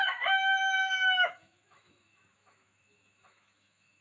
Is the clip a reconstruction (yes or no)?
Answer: yes